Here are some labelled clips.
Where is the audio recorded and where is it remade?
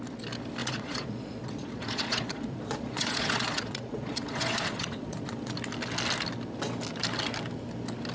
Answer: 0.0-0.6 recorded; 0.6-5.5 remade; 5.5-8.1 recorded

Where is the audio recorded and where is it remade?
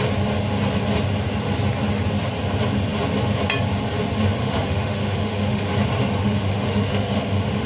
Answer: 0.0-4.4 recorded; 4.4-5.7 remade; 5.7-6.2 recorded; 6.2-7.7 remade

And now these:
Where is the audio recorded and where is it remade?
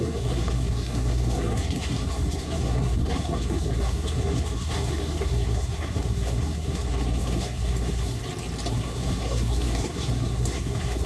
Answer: 0.0-8.2 remade; 8.2-8.7 recorded; 8.7-11.1 remade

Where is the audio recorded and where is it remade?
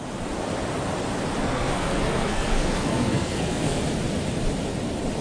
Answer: 0.0-1.4 recorded; 1.4-3.8 remade; 3.8-5.2 recorded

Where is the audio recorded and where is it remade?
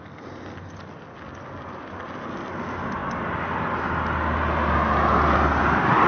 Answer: 0.0-6.1 recorded